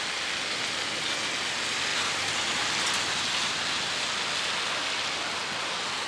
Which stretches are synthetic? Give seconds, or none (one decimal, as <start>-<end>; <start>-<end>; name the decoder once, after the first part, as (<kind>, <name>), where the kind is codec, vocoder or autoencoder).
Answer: none